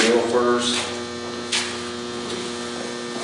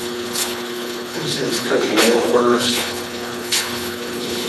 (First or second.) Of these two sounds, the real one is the first